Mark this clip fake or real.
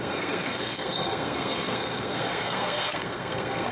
fake